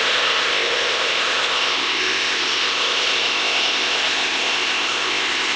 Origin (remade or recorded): remade